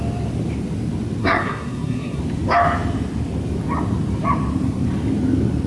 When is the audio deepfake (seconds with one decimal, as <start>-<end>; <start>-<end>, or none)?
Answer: 1.2-2.2